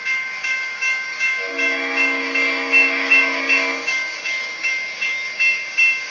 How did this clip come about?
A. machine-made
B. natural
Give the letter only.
A